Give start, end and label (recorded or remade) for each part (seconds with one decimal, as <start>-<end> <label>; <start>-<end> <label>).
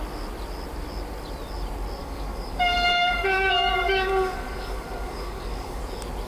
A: 0.0-2.0 recorded; 2.0-5.8 remade; 5.8-6.3 recorded